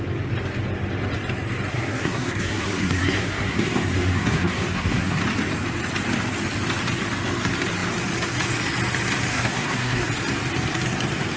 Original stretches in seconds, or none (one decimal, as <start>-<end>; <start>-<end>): 0.0-1.7; 5.2-9.3; 10.1-11.4